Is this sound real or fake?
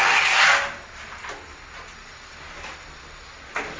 real